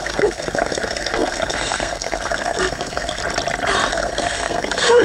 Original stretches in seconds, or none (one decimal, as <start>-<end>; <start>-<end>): 3.2-3.9